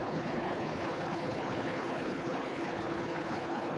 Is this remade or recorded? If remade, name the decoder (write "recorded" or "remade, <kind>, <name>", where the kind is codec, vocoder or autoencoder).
remade, codec, HILCodec